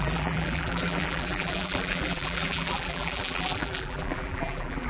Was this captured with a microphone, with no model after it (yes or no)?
no